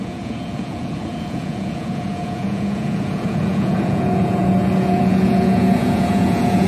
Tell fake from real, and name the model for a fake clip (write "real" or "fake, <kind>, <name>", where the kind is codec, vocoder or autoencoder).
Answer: fake, vocoder, Vocos